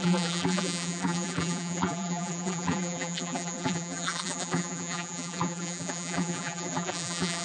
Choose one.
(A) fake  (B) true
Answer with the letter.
A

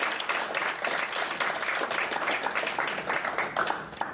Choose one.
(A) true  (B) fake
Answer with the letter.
B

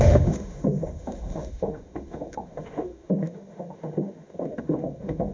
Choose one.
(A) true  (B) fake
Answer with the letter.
B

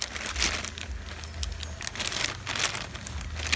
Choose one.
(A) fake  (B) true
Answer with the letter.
B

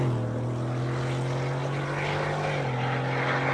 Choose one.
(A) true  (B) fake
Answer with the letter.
A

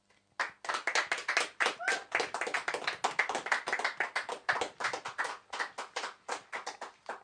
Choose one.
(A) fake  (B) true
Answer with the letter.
B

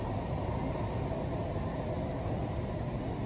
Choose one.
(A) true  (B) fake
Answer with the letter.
A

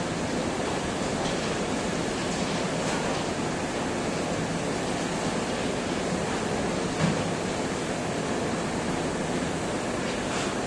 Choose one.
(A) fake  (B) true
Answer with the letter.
B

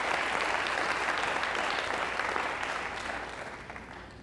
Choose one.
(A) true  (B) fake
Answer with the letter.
A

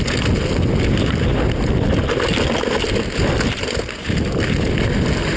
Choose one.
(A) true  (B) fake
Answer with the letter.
A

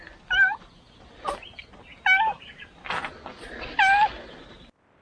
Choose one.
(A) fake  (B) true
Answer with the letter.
B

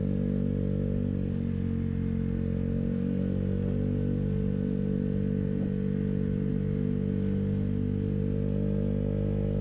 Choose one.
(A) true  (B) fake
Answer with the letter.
A